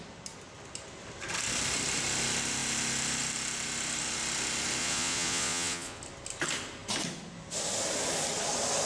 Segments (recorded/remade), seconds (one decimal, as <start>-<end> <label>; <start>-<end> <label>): 0.0-4.8 recorded; 4.8-6.0 remade; 6.0-8.9 recorded